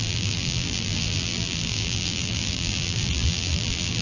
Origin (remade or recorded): remade